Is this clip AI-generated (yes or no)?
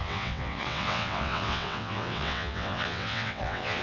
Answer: yes